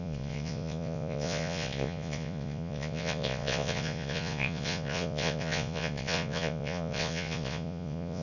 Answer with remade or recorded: remade